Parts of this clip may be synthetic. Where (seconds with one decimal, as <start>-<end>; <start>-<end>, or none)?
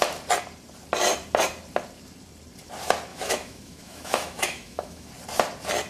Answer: 3.1-5.1